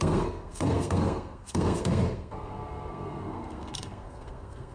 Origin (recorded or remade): remade